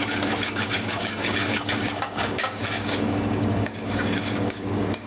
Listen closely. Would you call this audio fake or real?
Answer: fake